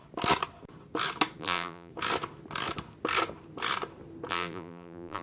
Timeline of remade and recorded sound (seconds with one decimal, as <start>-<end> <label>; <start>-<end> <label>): 0.0-1.4 recorded; 1.4-1.9 remade; 1.9-4.3 recorded; 4.3-5.2 remade